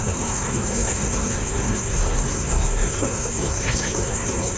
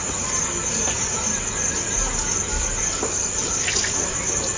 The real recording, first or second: second